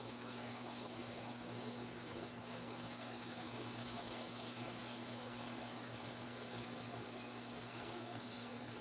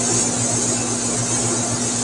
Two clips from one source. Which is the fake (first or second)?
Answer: first